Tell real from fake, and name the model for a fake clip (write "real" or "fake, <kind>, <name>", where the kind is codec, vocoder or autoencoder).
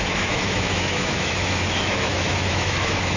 fake, autoencoder, DAC-VAE